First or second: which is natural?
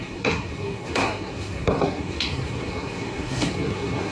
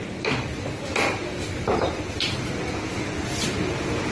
second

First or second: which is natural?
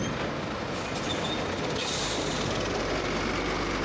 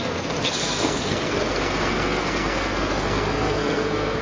first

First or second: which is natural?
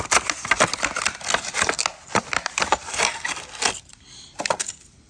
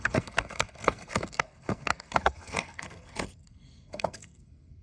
first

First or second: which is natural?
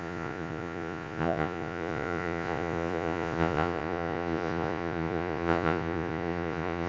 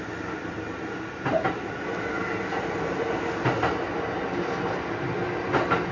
second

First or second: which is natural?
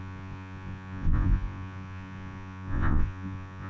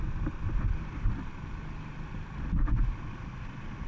second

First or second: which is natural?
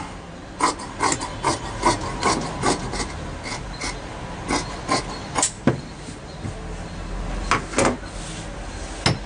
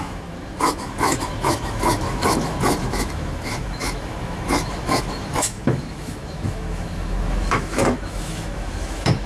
first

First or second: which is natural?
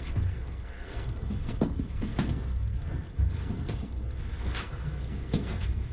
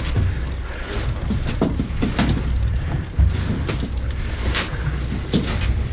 second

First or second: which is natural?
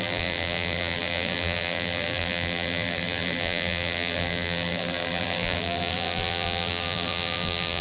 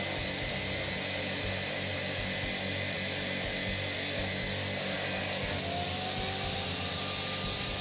second